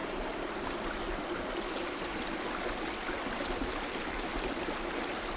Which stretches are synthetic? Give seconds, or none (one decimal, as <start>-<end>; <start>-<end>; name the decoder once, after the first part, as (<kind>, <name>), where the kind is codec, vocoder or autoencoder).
none